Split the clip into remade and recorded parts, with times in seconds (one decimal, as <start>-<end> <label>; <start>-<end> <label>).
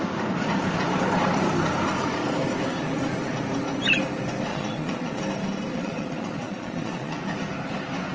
0.0-4.5 recorded; 4.5-5.2 remade; 5.2-5.7 recorded; 5.7-7.2 remade; 7.2-8.1 recorded